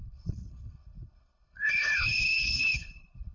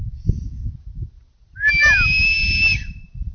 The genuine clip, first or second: second